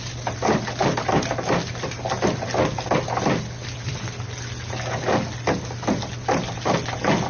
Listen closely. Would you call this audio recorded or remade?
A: recorded